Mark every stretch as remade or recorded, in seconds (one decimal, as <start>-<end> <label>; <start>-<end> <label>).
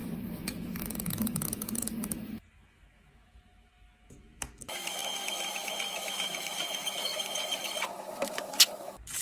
0.0-9.2 remade